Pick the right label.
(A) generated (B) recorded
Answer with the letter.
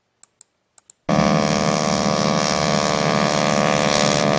B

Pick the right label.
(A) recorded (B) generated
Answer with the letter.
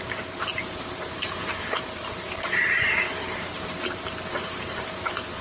B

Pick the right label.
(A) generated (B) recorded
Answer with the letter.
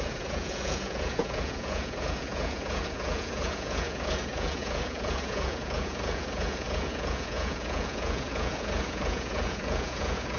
A